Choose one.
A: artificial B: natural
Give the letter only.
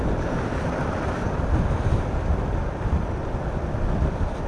A